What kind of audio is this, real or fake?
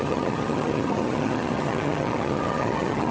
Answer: fake